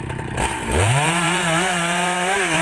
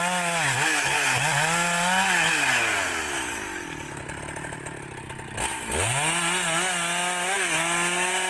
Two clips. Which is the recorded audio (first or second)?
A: second